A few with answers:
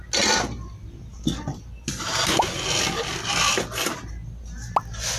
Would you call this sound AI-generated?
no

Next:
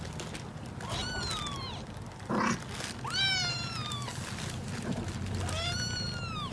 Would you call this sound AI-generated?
no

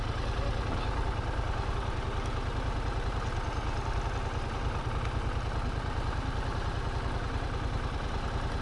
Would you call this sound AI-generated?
no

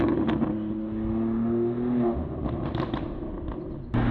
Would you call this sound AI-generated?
no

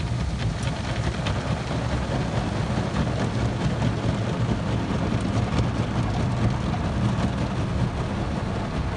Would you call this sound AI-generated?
no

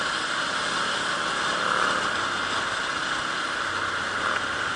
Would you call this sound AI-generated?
no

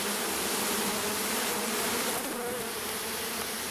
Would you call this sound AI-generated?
no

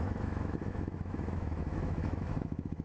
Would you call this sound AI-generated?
yes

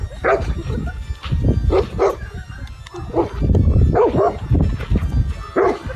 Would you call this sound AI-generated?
no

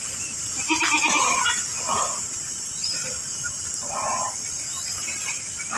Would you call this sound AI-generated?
no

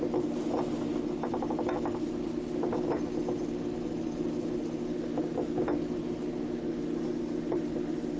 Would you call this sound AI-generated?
no